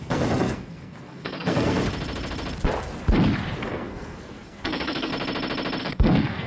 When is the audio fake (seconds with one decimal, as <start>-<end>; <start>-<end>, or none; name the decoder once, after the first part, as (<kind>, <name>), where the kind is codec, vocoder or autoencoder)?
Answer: 0.0-1.8 (codec, SNAC); 3.6-5.1; 5.8-6.5